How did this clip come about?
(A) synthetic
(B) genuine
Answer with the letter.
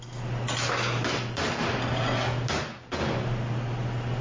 B